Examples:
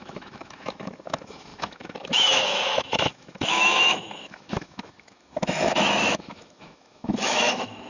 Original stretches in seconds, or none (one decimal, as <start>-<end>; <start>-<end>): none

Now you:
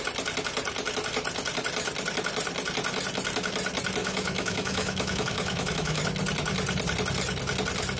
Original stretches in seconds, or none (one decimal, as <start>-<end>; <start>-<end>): 0.0-4.0; 6.0-8.0

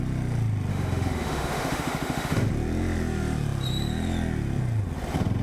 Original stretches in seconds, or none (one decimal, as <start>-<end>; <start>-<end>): 0.0-0.7; 2.5-5.4

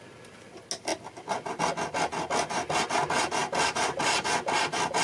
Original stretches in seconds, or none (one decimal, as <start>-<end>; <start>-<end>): 0.0-5.0